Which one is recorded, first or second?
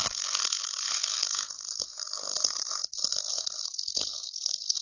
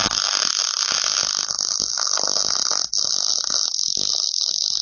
second